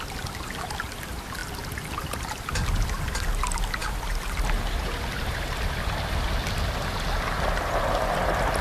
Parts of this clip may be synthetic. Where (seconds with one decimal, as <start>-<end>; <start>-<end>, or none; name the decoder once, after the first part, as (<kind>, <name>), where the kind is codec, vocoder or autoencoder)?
1.4-2.2 (vocoder, BigVGAN v2); 3.8-6.5